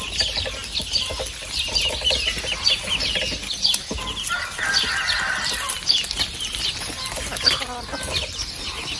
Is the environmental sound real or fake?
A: real